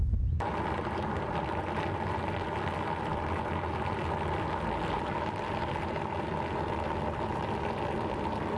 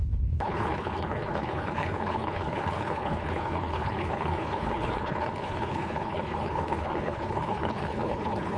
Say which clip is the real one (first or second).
first